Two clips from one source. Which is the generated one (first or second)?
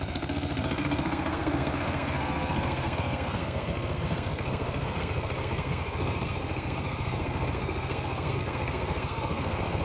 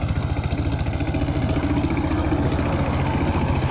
first